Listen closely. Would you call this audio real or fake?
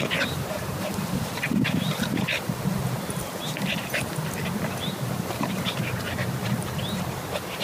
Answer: fake